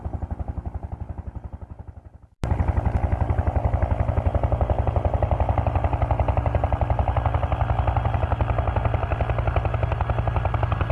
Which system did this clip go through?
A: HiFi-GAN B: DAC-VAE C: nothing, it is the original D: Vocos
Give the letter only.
C